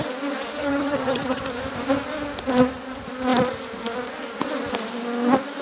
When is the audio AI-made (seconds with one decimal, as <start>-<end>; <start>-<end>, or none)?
0.6-1.4